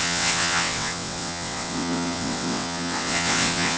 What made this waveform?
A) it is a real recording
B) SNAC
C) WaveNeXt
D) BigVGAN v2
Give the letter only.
C